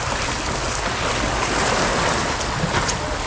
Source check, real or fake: real